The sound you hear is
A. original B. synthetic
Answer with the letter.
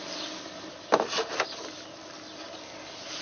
B